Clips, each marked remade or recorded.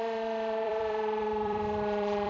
remade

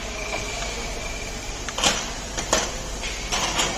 recorded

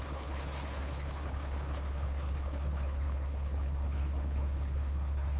remade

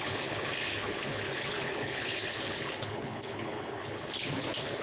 remade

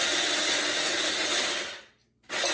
recorded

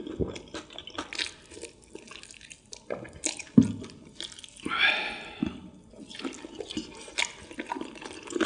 recorded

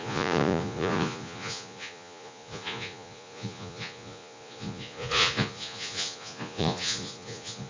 remade